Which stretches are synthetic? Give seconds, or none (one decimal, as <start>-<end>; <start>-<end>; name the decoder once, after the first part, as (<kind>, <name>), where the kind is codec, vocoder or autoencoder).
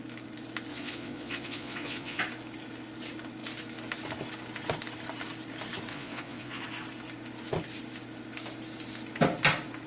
0.7-2.2 (vocoder, Vocos); 5.9-6.6